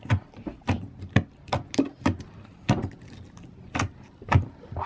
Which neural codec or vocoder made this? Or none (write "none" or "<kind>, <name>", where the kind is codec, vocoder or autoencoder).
none